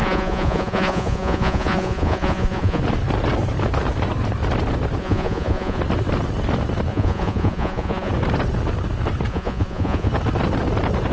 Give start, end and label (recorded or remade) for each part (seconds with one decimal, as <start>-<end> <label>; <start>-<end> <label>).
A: 0.0-2.8 remade; 2.8-5.0 recorded; 5.0-5.8 remade; 5.8-6.9 recorded; 6.9-8.1 remade; 8.1-9.3 recorded; 9.3-10.1 remade; 10.1-11.1 recorded